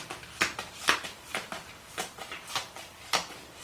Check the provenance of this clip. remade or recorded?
remade